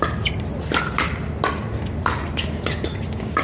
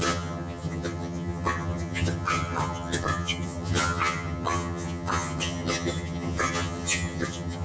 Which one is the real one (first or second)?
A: first